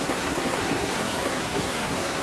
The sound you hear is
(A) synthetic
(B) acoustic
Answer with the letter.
A